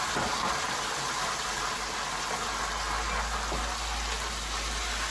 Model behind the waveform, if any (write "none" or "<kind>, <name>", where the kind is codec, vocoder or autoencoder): none